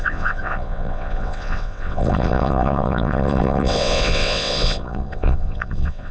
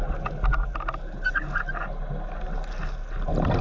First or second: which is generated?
first